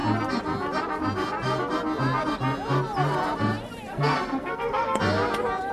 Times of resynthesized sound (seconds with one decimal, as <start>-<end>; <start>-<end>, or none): 3.9-5.0